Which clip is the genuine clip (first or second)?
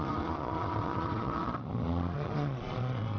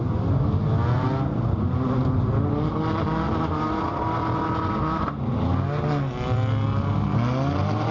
second